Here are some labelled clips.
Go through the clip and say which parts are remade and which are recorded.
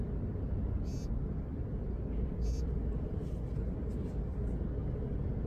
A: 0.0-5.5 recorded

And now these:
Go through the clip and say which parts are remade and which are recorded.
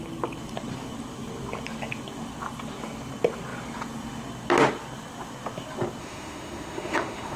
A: 0.0-6.0 recorded; 6.0-7.4 remade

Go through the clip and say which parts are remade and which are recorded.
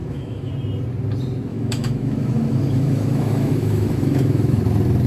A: 0.0-0.5 remade; 0.5-1.5 recorded; 1.5-4.6 remade; 4.6-5.1 recorded